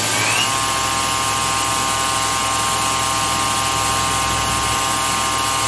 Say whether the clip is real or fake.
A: real